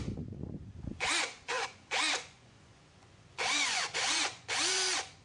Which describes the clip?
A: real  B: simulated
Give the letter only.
B